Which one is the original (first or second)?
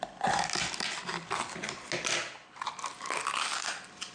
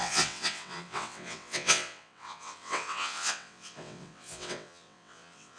first